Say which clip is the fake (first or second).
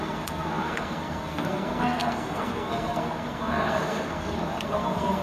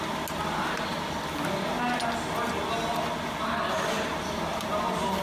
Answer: first